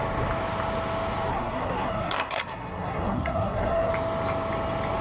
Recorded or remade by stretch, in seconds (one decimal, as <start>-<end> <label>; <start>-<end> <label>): 0.0-1.3 recorded; 1.3-3.9 remade; 3.9-5.0 recorded